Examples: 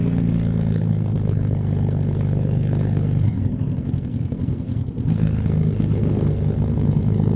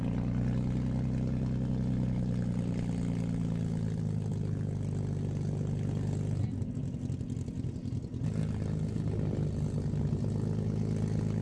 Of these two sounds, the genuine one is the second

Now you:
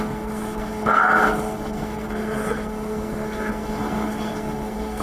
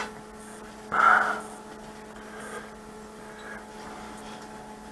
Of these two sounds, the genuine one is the second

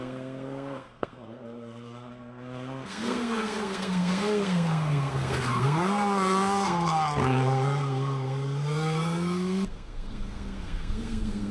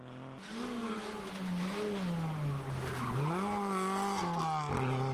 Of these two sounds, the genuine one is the second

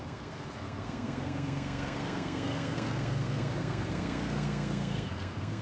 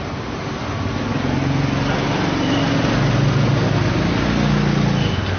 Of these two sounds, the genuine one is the second